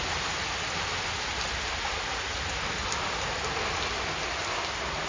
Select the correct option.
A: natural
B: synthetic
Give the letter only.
A